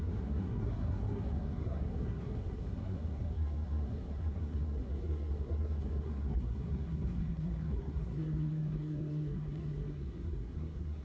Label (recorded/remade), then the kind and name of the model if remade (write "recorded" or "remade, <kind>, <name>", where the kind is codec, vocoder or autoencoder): remade, codec, SNAC